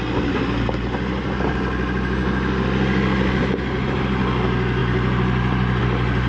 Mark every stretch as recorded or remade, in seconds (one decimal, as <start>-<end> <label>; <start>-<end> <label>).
0.0-6.3 recorded